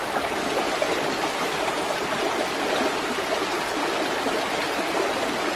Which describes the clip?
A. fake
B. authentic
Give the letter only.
B